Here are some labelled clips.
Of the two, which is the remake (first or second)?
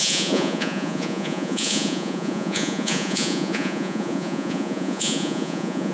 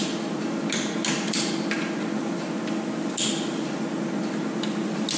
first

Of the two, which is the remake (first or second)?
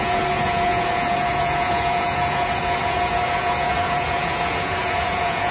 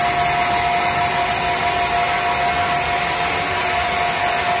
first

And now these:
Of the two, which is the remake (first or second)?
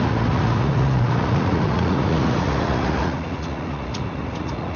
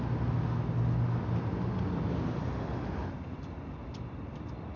first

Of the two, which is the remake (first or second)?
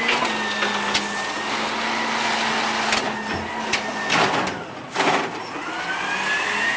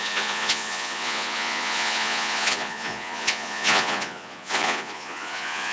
second